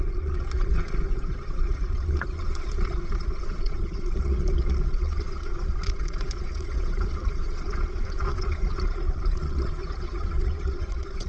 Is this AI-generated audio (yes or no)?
yes